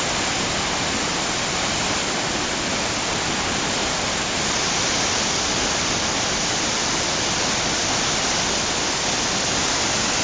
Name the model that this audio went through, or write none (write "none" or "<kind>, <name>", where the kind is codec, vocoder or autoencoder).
none